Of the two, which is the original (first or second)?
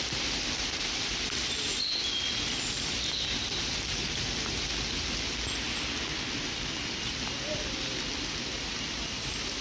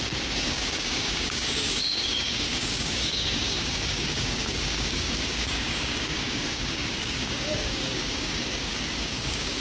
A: first